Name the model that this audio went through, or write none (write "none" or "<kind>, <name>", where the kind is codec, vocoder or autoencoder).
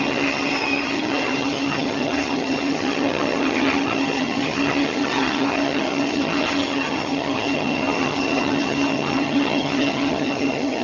vocoder, HiFi-GAN